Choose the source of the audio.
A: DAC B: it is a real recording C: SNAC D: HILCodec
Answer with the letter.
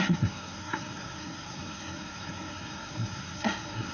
C